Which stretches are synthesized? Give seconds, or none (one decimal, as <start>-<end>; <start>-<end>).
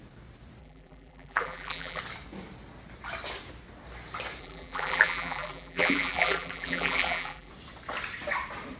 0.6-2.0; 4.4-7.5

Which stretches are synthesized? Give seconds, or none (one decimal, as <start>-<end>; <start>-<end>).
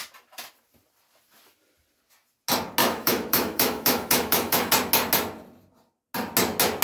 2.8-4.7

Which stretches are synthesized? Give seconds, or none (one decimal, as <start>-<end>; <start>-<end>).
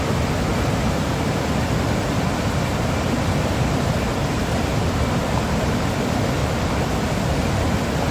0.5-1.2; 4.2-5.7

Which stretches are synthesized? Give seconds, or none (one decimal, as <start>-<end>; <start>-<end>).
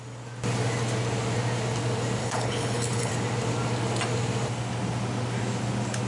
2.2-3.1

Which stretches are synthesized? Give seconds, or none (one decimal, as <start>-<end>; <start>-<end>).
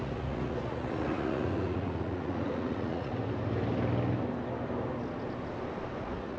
0.0-3.1; 6.0-6.4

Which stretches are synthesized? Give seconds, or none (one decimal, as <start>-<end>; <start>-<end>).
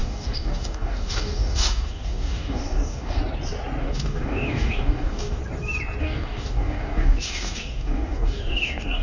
0.0-3.2; 3.8-5.4; 6.0-9.0